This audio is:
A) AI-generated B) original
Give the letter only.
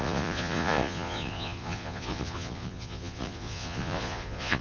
A